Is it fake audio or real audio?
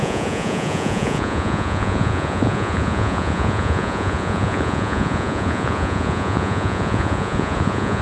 fake